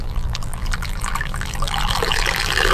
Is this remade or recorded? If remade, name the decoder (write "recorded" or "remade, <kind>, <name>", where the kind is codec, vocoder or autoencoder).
remade, vocoder, BigVGAN v2